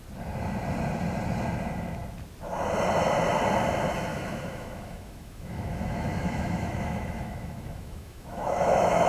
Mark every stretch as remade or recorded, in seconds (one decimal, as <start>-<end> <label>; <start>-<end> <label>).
0.0-4.1 recorded; 4.1-9.1 remade